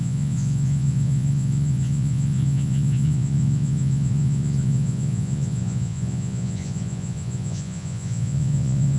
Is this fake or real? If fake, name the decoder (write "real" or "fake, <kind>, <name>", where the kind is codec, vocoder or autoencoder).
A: fake, vocoder, Vocos